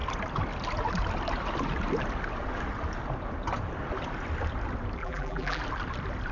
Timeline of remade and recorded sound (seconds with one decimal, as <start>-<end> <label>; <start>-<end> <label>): 0.0-5.0 recorded; 5.0-5.6 remade; 5.6-6.3 recorded